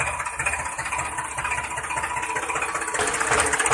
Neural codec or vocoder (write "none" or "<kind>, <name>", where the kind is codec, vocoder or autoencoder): none